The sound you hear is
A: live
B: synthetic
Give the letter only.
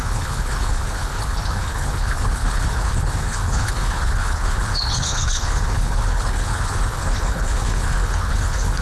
B